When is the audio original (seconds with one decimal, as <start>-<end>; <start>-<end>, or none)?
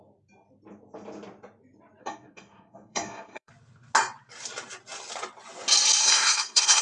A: 0.0-2.0; 3.5-6.0